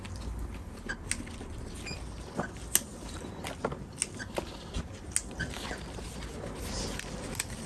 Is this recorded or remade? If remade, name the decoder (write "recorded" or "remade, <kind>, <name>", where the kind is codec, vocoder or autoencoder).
recorded